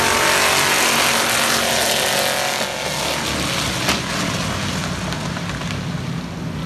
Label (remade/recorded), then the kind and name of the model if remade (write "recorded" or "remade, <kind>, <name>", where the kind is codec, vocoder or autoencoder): recorded